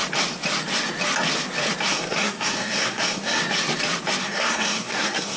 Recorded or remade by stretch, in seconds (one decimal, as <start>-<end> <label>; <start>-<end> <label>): 0.0-1.9 recorded; 1.9-3.4 remade; 3.4-4.2 recorded; 4.2-5.4 remade